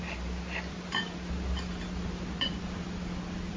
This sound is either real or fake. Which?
real